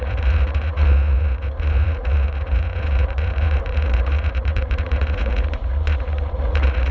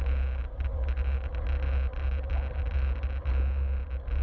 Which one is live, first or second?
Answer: second